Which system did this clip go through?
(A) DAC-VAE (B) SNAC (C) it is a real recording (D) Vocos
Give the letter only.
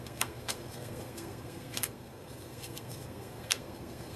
B